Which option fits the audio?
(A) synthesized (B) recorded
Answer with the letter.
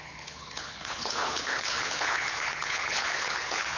A